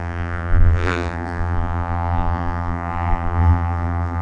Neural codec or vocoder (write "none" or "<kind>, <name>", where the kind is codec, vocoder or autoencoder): vocoder, BigVGAN v2